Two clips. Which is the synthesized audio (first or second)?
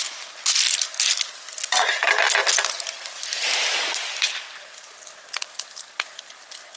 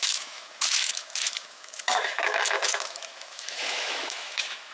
second